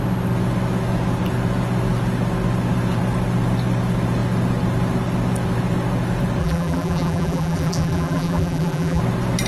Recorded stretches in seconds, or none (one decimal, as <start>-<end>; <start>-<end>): 0.0-6.4; 9.0-9.5